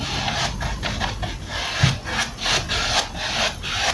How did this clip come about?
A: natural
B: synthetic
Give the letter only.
A